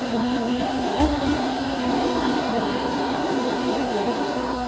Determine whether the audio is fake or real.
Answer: fake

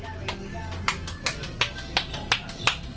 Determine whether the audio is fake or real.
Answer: real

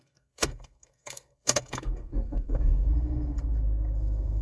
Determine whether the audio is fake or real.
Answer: fake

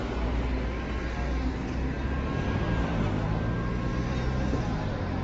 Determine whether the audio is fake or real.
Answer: real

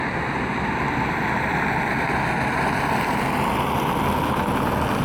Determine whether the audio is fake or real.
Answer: real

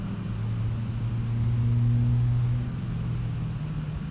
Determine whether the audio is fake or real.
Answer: real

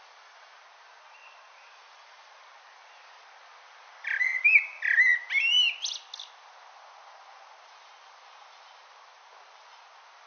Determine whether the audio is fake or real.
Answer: real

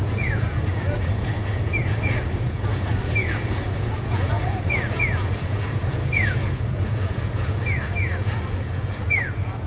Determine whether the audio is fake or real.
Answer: fake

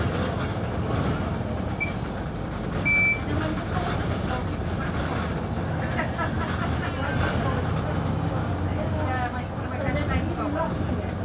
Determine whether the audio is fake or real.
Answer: real